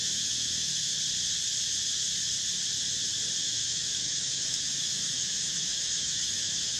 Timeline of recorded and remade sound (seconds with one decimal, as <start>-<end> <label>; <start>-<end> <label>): 0.0-0.9 remade; 0.9-3.4 recorded; 3.4-6.8 remade